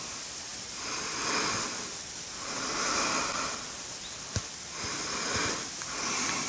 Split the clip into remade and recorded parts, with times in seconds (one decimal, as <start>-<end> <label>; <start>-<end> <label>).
0.0-6.5 recorded